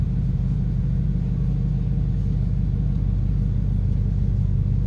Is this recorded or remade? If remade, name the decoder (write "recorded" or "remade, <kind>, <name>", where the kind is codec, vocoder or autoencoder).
recorded